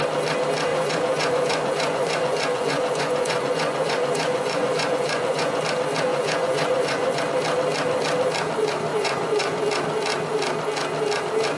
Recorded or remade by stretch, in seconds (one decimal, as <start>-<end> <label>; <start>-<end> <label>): 0.0-0.7 recorded; 0.7-5.6 remade; 5.6-6.1 recorded; 6.1-7.2 remade; 7.2-8.9 recorded; 8.9-9.6 remade; 9.6-11.6 recorded